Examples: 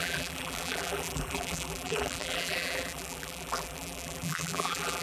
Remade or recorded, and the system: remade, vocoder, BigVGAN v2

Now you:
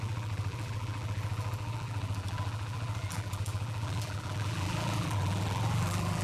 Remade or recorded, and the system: remade, vocoder, BigVGAN v2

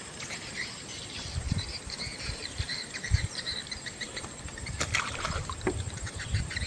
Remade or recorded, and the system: remade, vocoder, BigVGAN v2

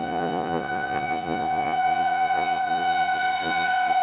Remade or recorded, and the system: remade, vocoder, Vocos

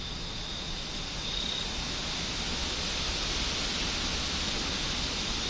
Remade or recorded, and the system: recorded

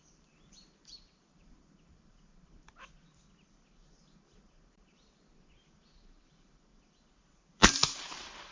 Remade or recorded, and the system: remade, vocoder, BigVGAN v2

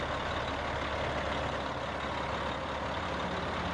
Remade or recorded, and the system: recorded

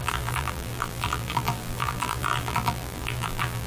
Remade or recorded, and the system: remade, vocoder, BigVGAN v2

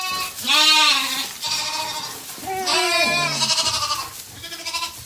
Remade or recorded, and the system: recorded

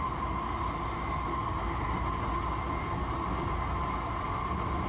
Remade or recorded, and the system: recorded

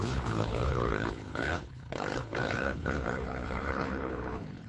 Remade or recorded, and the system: remade, codec, HILCodec